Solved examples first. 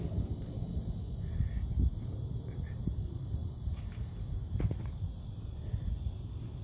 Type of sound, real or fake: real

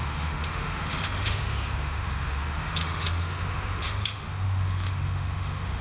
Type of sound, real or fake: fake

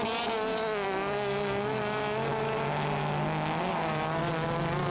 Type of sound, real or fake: real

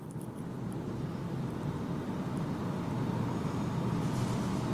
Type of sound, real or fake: real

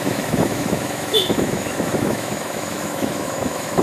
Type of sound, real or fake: fake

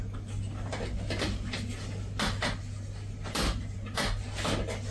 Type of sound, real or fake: real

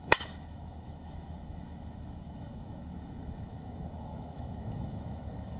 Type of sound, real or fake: fake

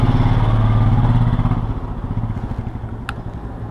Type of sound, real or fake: real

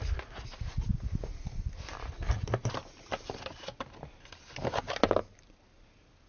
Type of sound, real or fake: real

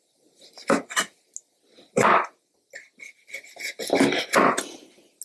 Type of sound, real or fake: real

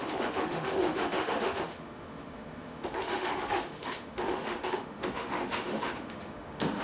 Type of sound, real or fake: fake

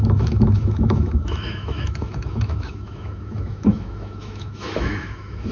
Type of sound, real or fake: fake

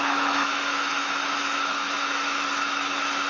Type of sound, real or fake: fake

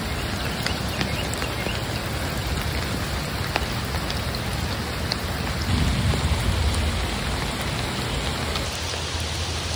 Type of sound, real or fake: real